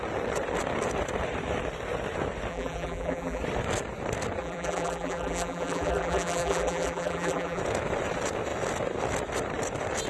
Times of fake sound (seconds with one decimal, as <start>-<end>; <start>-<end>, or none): 2.5-3.4; 4.4-7.6